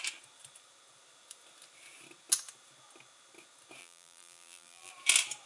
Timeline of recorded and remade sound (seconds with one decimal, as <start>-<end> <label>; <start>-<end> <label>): 0.0-3.8 recorded; 3.8-4.9 remade; 4.9-5.5 recorded